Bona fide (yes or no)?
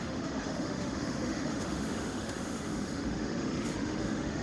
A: no